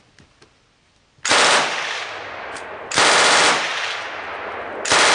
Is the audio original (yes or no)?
yes